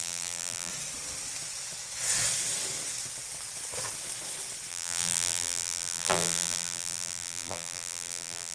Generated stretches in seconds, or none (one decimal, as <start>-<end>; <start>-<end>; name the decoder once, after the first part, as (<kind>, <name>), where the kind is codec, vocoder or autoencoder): 0.0-0.7 (vocoder, BigVGAN v2); 4.7-8.5